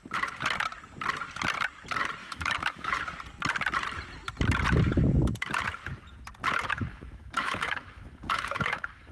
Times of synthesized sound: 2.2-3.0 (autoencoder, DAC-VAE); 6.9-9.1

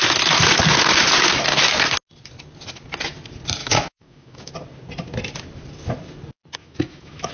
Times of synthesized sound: 3.6-4.5 (autoencoder, DAC-VAE); 6.6-7.3

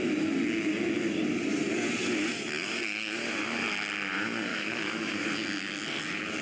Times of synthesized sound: 4.5-5.1 (autoencoder, DAC-VAE)

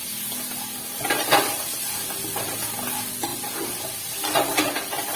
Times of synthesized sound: none

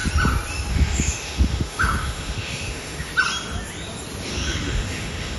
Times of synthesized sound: 0.7-3.1 (autoencoder, DAC-VAE); 4.3-5.4

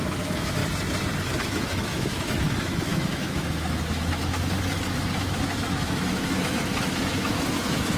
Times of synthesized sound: 0.0-0.6 (autoencoder, DAC-VAE); 1.2-8.0